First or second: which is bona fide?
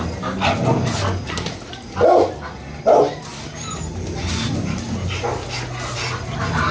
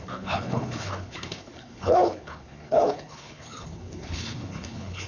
first